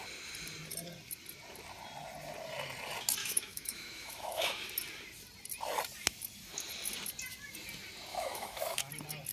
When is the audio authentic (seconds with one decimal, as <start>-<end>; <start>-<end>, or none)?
0.0-3.2; 4.7-8.1; 8.9-9.3